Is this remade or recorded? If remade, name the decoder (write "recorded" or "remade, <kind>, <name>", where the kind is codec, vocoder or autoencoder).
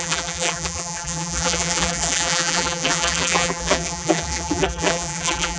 remade, vocoder, BigVGAN v2